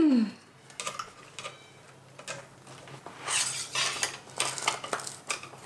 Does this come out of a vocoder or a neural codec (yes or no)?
no